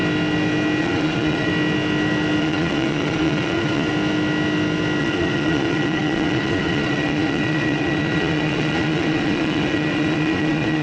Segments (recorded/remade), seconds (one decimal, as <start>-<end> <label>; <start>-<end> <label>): 0.0-0.8 recorded; 0.8-1.5 remade; 1.5-2.4 recorded; 2.4-3.9 remade; 3.9-5.0 recorded; 5.0-10.8 remade